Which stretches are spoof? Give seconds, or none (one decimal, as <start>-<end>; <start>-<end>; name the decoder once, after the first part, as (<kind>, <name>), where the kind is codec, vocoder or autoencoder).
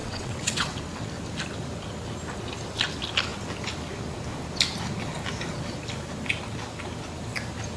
0.0-0.8 (vocoder, WaveNeXt)